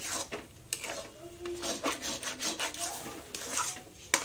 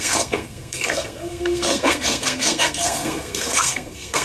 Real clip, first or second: first